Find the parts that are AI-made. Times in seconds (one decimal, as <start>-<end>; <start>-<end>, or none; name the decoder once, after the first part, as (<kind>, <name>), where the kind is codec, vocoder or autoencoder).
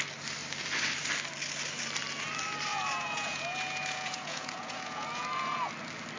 2.7-5.7 (vocoder, Vocos)